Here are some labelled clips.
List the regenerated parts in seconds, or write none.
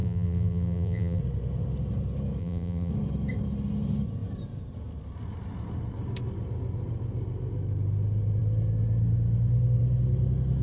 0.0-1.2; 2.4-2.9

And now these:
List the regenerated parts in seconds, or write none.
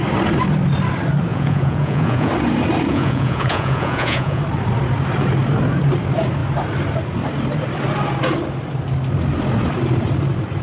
1.3-2.3; 2.9-4.4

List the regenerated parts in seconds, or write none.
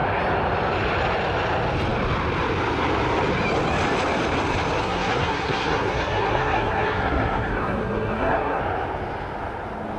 4.8-8.6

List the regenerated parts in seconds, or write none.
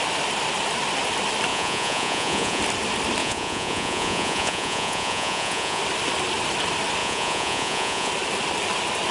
1.5-2.6; 3.2-5.8; 7.0-8.1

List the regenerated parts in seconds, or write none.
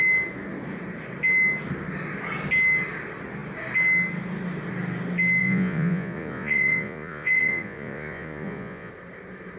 5.4-8.9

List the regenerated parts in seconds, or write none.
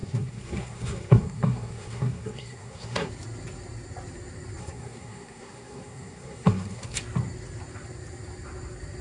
0.0-3.1; 4.6-7.0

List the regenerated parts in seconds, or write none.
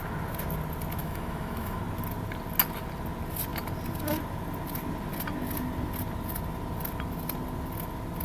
1.0-1.8